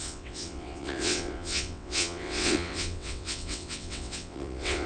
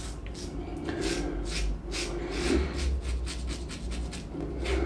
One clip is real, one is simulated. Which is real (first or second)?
second